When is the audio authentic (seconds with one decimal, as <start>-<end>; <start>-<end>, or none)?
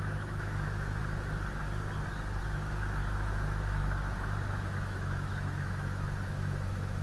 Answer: 1.0-2.4